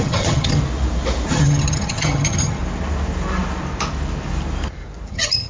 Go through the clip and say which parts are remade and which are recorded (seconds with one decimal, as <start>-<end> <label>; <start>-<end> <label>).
0.0-0.6 remade; 0.6-1.3 recorded; 1.3-2.6 remade; 2.6-5.1 recorded; 5.1-5.5 remade